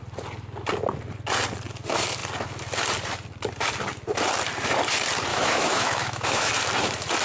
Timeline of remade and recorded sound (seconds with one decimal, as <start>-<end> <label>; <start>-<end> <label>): 0.0-5.3 recorded; 5.3-6.5 remade; 6.5-7.2 recorded